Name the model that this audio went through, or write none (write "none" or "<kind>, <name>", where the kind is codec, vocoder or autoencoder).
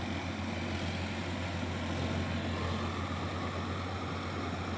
none